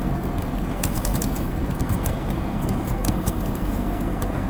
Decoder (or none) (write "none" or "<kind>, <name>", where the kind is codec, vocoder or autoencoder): codec, SNAC